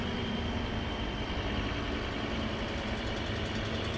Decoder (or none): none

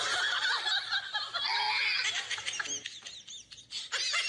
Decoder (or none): none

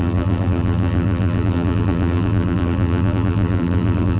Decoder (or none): vocoder, BigVGAN v2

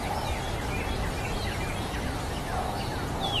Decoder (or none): none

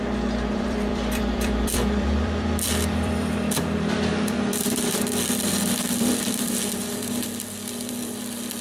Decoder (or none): vocoder, BigVGAN v2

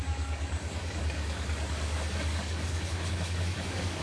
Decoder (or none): codec, DAC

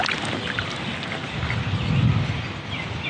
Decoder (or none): none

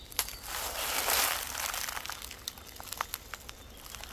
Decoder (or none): none